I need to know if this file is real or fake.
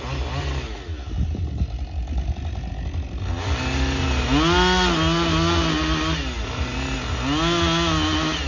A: real